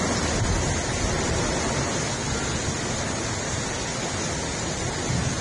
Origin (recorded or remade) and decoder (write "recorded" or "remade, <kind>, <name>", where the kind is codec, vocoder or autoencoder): recorded